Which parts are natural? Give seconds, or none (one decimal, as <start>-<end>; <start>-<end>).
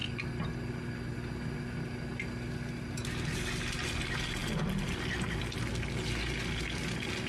0.0-7.3